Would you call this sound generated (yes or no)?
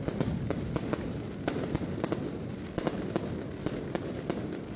no